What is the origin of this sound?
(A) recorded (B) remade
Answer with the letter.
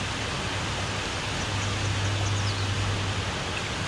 A